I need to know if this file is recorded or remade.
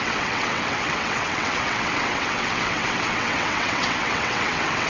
remade